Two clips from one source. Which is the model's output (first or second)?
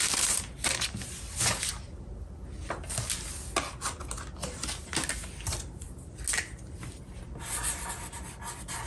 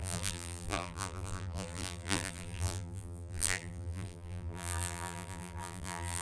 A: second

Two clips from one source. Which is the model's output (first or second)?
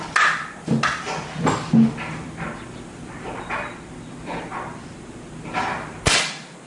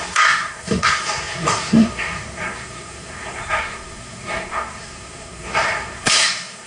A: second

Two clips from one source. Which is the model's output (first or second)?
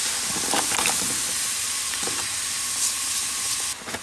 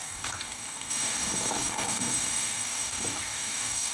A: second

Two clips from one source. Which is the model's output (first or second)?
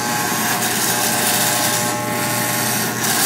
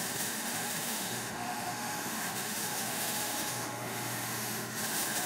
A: second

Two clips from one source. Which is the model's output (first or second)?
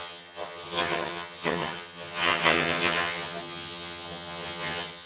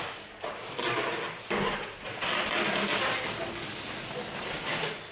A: first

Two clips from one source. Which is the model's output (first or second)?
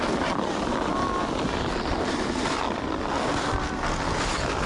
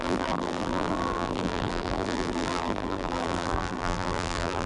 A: second